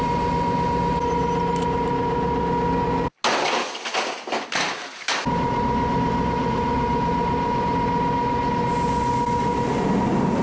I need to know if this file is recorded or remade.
recorded